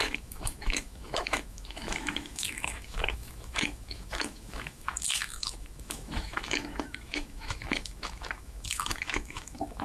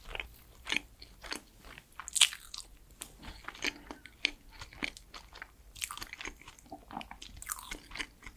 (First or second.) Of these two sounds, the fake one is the first